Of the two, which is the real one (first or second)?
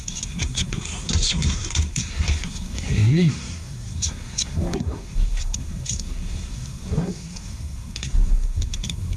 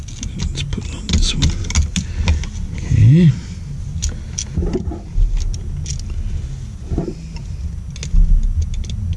second